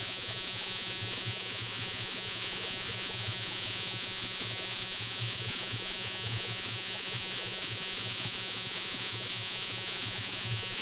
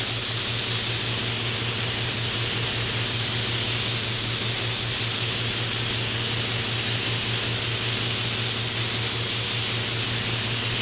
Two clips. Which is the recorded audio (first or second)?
second